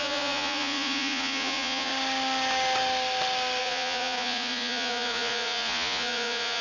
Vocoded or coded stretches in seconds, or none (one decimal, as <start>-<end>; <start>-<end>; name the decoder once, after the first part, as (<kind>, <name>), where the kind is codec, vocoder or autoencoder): 0.0-1.9 (vocoder, Vocos); 3.6-6.6